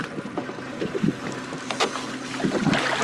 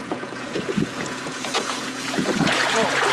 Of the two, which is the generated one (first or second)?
second